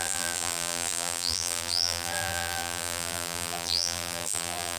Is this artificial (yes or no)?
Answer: yes